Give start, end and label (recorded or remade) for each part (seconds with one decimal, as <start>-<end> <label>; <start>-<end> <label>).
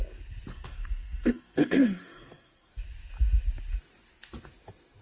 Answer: 0.0-0.5 recorded; 0.5-2.7 remade; 2.7-5.0 recorded